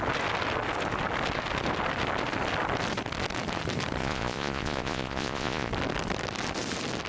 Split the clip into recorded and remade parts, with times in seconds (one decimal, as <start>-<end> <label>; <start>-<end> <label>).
0.0-4.0 recorded; 4.0-5.7 remade; 5.7-7.1 recorded